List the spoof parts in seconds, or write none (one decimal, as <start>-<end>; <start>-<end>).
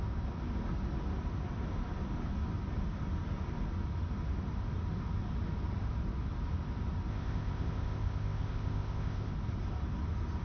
7.1-9.3